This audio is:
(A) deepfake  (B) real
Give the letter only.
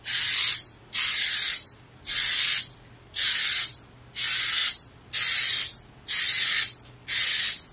B